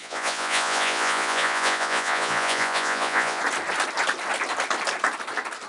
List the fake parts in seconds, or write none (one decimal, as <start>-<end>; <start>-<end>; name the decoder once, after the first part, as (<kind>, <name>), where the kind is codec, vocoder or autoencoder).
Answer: 0.0-3.4 (vocoder, Vocos)

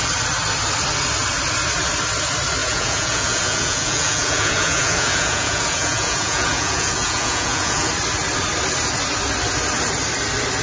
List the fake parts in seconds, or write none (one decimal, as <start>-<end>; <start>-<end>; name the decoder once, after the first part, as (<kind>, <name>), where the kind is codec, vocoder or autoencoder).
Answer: 2.6-7.9 (vocoder, Vocos)